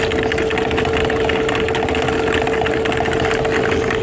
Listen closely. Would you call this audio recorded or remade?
recorded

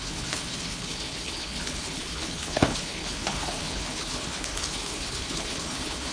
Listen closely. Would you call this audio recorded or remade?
remade